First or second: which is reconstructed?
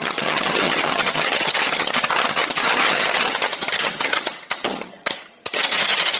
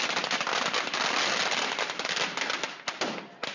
first